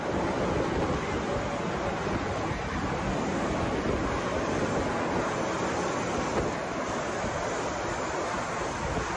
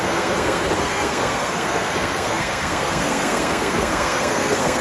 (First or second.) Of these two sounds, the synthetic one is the second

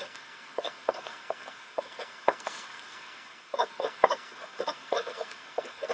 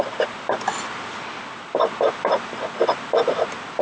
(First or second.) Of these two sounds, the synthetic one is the first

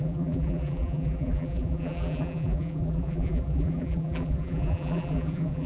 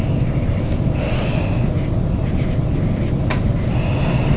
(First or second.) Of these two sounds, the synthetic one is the first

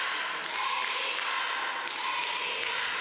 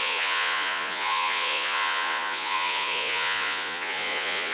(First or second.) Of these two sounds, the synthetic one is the second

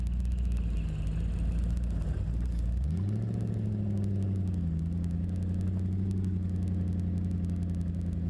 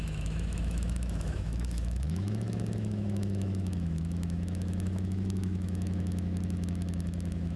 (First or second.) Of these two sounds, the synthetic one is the second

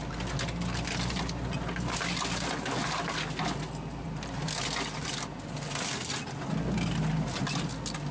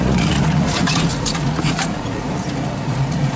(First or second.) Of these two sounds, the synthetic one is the second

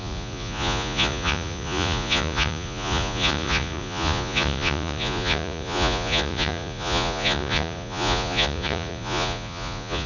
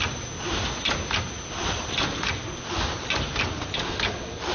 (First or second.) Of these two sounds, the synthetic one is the first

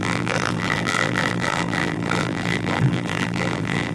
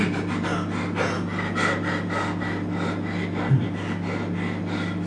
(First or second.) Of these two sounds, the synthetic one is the first